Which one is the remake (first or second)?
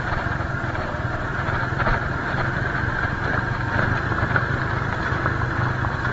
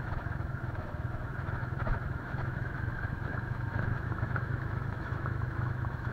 second